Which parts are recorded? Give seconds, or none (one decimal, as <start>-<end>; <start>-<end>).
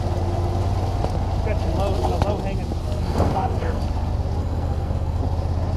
0.0-2.8; 3.8-4.4; 5.2-5.8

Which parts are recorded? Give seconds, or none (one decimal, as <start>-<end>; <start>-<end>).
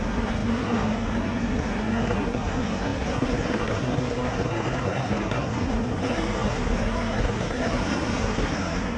none